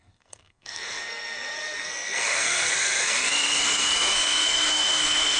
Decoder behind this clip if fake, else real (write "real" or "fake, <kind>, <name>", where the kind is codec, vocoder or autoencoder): fake, codec, SNAC